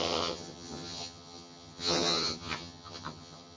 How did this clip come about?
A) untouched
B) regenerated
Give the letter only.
B